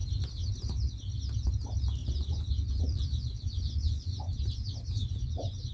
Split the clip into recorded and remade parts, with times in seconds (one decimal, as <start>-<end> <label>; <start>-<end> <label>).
0.0-2.0 recorded; 2.0-4.4 remade; 4.4-5.0 recorded; 5.0-5.7 remade

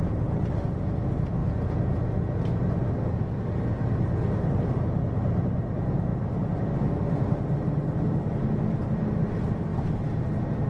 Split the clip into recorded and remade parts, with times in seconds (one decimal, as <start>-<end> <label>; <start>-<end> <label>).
0.0-1.4 recorded; 1.4-2.2 remade; 2.2-10.7 recorded

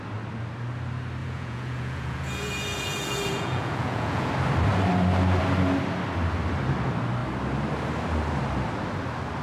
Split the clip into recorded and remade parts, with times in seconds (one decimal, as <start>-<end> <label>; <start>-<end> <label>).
0.0-1.2 recorded; 1.2-4.3 remade; 4.3-9.4 recorded

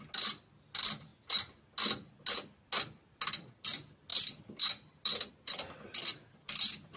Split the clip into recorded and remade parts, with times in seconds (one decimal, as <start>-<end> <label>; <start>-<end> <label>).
0.0-7.0 recorded

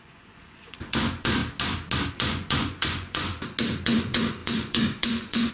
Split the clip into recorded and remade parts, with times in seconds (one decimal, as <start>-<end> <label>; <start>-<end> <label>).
0.0-1.4 remade; 1.4-2.1 recorded; 2.1-3.3 remade; 3.3-3.8 recorded; 3.8-5.5 remade